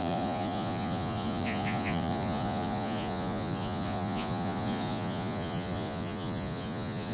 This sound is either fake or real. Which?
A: fake